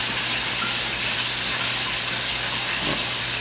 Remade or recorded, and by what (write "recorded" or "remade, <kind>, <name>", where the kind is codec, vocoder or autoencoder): recorded